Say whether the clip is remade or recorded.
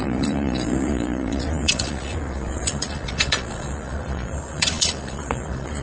remade